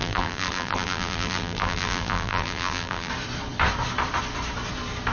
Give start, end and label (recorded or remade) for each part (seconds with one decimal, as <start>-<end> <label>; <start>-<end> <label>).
0.0-3.1 remade; 3.1-5.1 recorded